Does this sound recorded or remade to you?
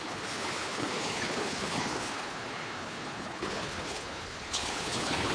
remade